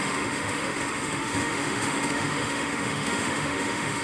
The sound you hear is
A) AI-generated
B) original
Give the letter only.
A